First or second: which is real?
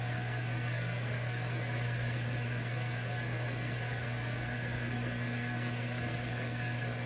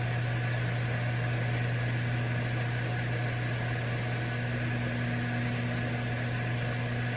second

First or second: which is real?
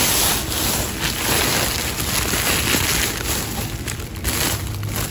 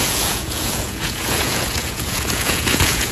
first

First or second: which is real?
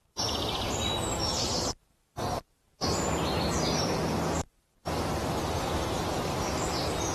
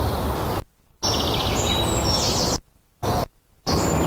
second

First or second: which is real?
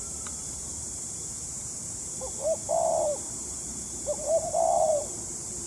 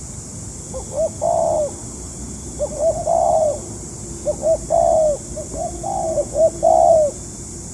second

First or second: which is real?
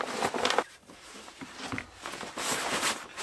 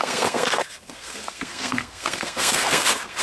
first